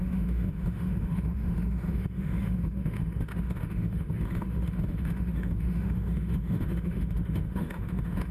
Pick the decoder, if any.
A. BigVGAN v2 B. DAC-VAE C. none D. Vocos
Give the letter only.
B